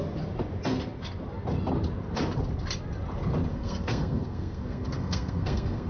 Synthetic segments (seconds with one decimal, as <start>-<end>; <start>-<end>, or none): 3.5-5.9